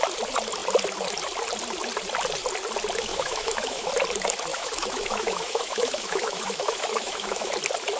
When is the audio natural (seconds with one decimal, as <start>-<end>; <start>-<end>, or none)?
0.0-3.1; 3.9-4.5; 7.5-8.0